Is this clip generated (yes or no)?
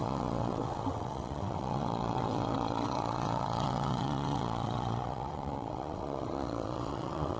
yes